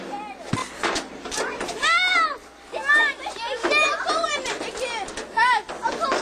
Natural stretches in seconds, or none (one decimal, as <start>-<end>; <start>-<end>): 0.0-6.2